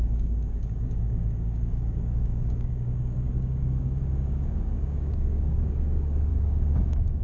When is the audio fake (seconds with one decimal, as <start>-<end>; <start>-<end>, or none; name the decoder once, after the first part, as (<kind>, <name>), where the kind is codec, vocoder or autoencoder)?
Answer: 0.0-7.2 (codec, DAC)

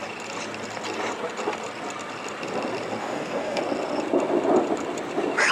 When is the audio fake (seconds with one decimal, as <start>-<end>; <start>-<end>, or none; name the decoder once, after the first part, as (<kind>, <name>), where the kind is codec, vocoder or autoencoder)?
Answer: 3.0-3.6 (codec, DAC)

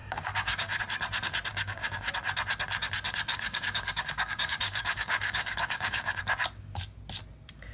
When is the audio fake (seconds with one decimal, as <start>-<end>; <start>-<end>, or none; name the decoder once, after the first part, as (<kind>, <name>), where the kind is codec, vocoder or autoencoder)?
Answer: 0.0-0.8 (codec, DAC); 1.5-2.1; 3.3-6.2